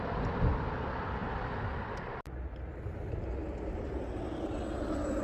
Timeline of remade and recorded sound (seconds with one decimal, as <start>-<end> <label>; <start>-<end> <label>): 0.0-5.2 recorded